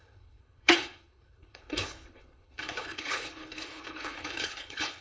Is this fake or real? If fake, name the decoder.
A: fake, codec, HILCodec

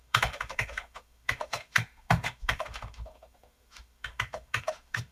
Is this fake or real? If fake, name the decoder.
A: fake, autoencoder, DAC-VAE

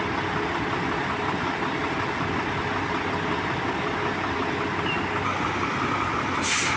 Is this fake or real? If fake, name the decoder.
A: real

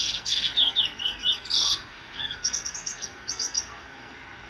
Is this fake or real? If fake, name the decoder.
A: fake, codec, SNAC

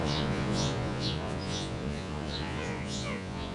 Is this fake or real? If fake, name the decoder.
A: fake, vocoder, Vocos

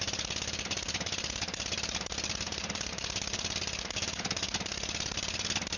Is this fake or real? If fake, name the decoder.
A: fake, vocoder, BigVGAN v2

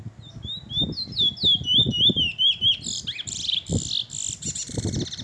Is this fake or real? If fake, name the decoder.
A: real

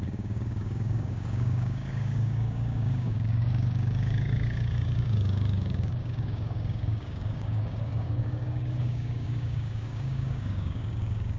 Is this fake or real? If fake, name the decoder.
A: fake, codec, DAC